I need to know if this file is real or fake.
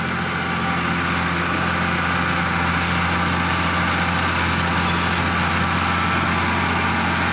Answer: real